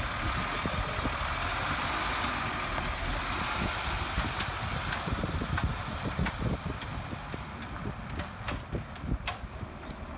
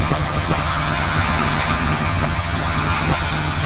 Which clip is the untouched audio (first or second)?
first